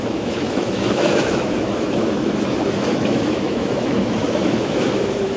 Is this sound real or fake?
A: fake